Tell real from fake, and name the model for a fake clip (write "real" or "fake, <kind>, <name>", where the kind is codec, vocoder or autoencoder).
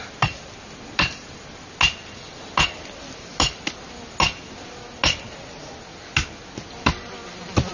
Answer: real